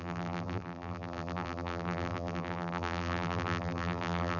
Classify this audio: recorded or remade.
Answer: remade